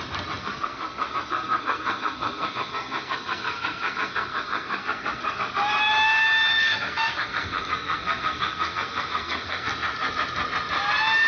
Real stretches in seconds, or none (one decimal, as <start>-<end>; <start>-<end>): 0.0-0.4; 5.4-6.5; 9.7-11.3